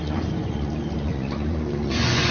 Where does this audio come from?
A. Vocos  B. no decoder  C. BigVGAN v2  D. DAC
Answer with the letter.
A